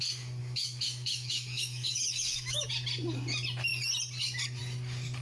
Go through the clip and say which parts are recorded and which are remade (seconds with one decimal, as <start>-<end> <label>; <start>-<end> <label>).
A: 0.0-0.4 recorded; 0.4-2.7 remade; 2.7-5.2 recorded

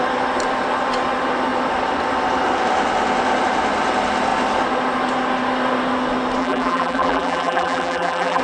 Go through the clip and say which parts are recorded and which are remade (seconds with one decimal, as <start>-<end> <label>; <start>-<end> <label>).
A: 0.0-6.4 recorded; 6.4-8.4 remade

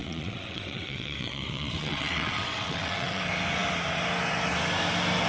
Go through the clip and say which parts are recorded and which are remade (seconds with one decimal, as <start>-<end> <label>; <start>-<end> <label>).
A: 0.0-3.2 remade; 3.2-5.3 recorded

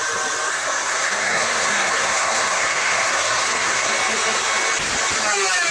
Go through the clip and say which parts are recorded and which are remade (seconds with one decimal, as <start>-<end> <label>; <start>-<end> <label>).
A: 0.0-0.5 recorded; 0.5-3.9 remade; 3.9-5.7 recorded

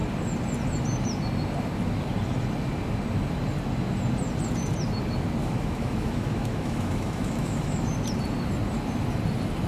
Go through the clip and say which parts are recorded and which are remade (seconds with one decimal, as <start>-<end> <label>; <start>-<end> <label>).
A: 0.0-5.4 recorded; 5.4-7.9 remade; 7.9-9.7 recorded

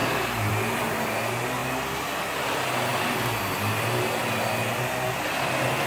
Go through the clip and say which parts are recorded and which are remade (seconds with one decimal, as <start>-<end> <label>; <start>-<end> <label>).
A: 0.0-0.5 remade; 0.5-1.6 recorded; 1.6-2.2 remade; 2.2-5.9 recorded

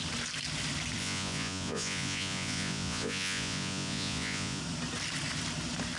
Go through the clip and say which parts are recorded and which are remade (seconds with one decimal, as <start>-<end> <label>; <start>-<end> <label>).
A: 0.0-1.0 recorded; 1.0-4.6 remade; 4.6-6.0 recorded